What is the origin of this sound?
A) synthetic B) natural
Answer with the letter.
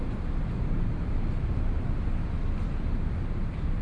B